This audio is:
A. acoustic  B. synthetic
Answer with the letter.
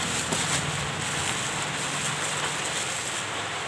A